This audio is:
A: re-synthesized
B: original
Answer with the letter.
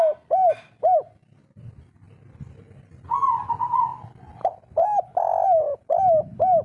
B